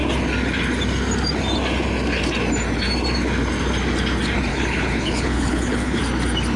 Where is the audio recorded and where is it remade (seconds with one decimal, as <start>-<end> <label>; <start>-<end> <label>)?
0.0-4.5 recorded; 4.5-6.0 remade; 6.0-6.6 recorded